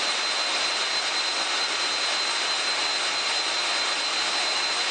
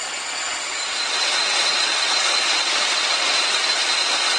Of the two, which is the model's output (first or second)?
second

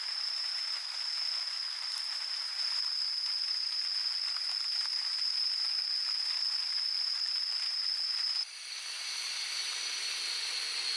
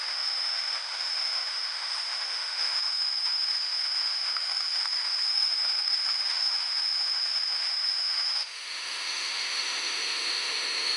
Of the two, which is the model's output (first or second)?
second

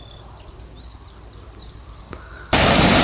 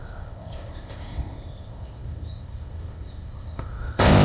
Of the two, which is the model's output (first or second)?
second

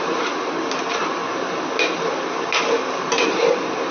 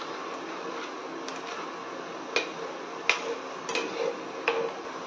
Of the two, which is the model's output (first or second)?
first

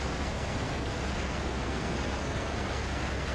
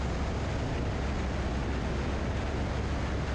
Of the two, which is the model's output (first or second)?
first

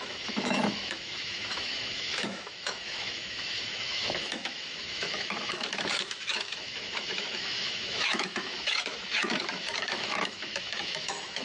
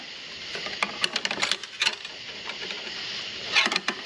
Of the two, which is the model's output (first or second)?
first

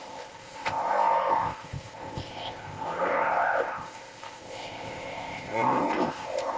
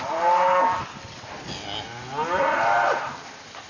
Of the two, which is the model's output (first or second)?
first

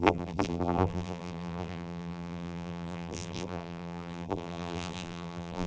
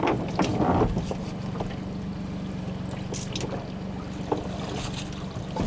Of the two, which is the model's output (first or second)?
first